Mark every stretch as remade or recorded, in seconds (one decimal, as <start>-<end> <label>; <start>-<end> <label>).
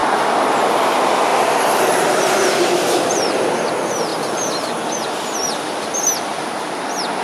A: 0.0-0.6 remade; 0.6-1.3 recorded; 1.3-2.9 remade; 2.9-7.2 recorded